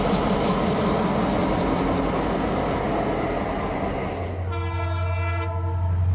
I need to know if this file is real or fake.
real